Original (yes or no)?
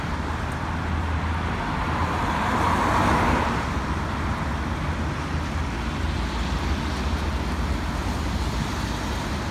yes